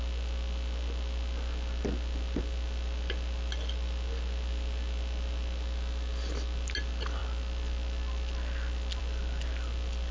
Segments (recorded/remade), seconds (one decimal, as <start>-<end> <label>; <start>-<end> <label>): 0.0-10.1 recorded